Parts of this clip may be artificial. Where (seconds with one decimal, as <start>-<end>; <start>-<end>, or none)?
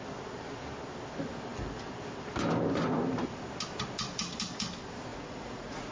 5.1-5.9